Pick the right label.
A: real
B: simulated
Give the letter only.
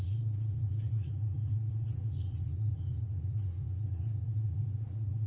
B